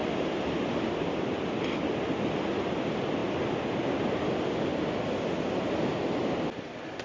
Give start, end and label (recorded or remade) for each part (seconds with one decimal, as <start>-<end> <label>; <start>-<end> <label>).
0.0-7.0 recorded